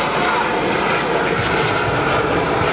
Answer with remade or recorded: recorded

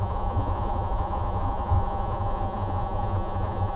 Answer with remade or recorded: remade